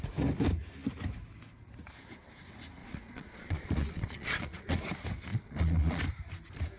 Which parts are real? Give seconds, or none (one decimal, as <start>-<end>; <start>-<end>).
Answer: 0.0-2.8; 4.8-5.3; 6.0-6.8